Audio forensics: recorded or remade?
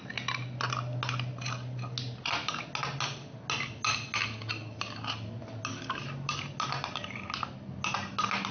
recorded